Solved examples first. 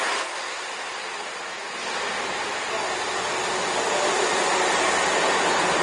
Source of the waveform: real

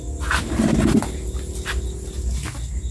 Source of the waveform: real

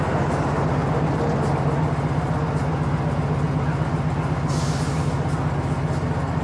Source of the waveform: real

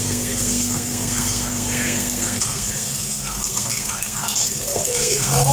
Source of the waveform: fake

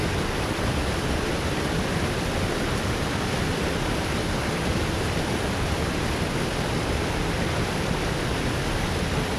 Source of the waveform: real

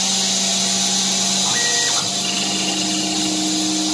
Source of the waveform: real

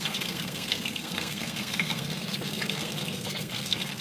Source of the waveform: fake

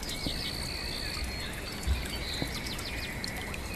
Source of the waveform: real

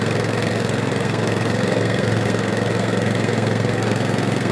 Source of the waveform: fake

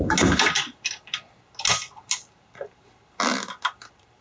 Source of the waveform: real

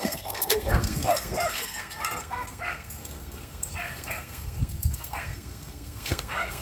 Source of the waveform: fake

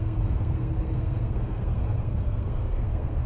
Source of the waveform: fake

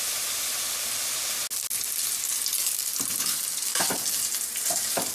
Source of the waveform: real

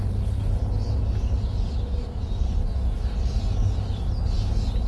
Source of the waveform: real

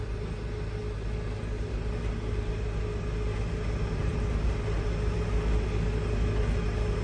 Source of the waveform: real